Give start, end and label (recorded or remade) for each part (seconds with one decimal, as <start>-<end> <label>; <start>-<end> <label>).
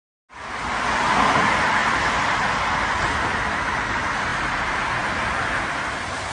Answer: 0.0-1.8 recorded; 1.8-2.5 remade; 2.5-6.3 recorded